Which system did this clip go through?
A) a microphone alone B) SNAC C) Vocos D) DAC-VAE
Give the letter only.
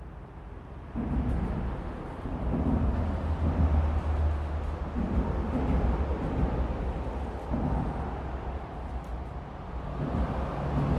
A